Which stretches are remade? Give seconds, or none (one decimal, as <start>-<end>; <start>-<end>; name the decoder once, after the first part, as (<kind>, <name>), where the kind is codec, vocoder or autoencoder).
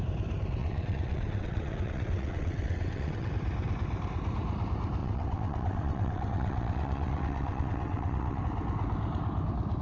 0.6-3.3 (vocoder, WaveNeXt); 5.0-8.4